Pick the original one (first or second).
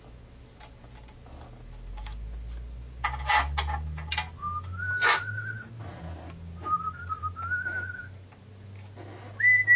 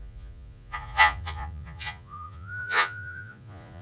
first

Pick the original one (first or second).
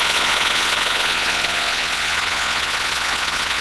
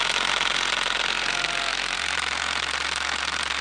second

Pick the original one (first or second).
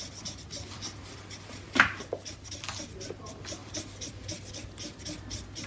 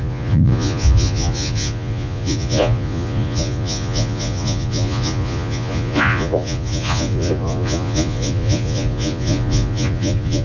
first